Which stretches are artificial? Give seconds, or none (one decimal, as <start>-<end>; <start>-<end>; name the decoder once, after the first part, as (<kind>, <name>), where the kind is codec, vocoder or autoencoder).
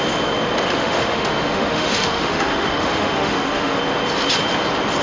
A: 0.8-3.8 (autoencoder, DAC-VAE)